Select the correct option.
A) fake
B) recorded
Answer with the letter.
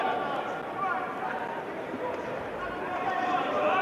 B